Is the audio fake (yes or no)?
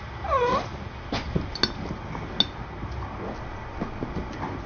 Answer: no